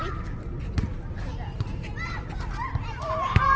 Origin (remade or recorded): recorded